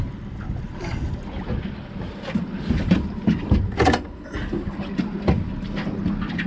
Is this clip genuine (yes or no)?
yes